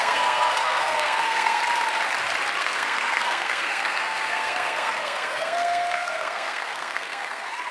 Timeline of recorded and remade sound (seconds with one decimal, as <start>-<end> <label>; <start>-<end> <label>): 0.0-1.6 remade; 1.6-2.6 recorded; 2.6-7.7 remade